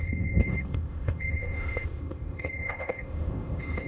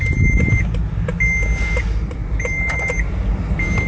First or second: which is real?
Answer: second